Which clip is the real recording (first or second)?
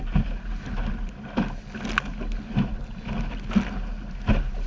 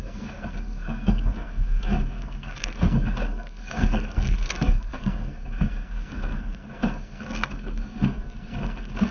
first